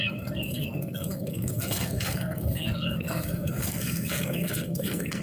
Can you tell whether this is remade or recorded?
remade